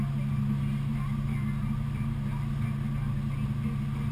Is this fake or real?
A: real